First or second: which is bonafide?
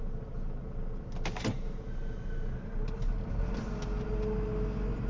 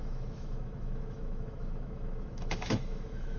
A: first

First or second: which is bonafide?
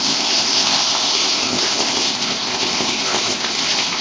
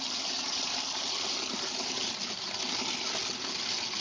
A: second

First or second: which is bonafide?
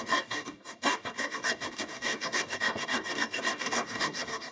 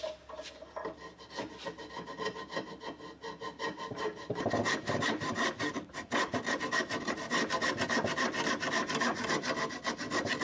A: second